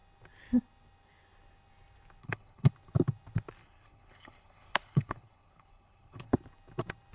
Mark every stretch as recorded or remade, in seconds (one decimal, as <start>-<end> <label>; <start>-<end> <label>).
0.0-2.2 recorded; 2.2-2.7 remade; 2.7-3.6 recorded; 3.6-6.3 remade; 6.3-7.1 recorded